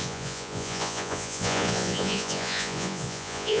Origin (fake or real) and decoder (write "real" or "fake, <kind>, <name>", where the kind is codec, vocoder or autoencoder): fake, vocoder, Vocos